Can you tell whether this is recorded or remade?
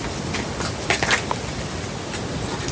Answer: recorded